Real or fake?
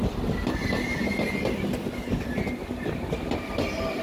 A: real